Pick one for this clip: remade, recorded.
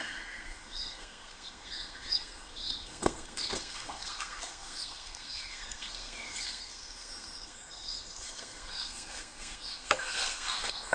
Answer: remade